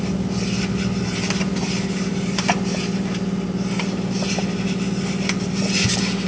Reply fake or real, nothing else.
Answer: real